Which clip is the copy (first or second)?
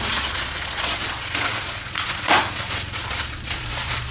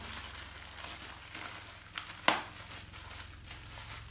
first